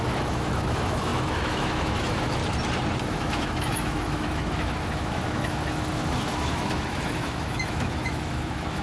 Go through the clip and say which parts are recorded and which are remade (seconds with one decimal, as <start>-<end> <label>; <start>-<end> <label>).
0.0-2.4 remade; 2.4-3.0 recorded; 3.0-8.8 remade